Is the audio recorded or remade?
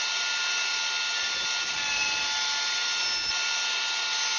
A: recorded